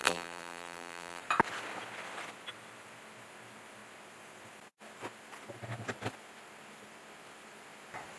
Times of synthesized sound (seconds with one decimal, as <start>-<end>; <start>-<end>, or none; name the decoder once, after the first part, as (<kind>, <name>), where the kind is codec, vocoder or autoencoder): 0.0-1.2 (vocoder, BigVGAN v2)